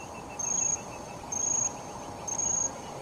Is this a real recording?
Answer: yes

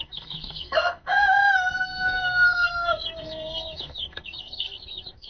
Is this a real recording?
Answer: no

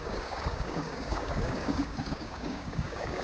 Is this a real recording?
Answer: no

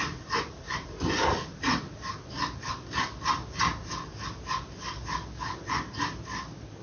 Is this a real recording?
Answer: yes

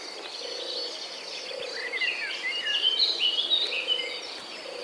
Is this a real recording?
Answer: yes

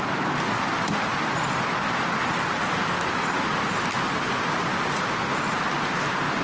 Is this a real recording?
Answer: yes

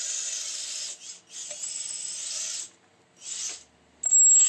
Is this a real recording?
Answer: yes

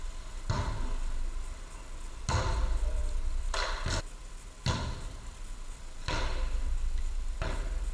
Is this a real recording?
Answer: yes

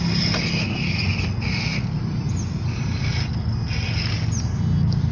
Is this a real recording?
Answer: yes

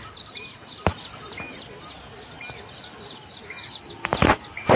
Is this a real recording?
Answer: yes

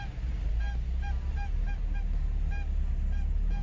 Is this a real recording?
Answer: yes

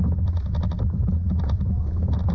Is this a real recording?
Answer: yes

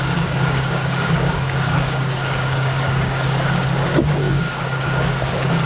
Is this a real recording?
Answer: no